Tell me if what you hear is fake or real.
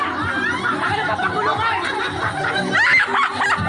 real